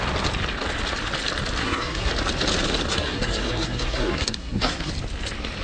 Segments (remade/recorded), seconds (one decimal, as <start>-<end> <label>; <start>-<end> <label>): 0.0-1.6 recorded; 1.6-2.1 remade; 2.1-2.9 recorded; 2.9-4.9 remade; 4.9-5.6 recorded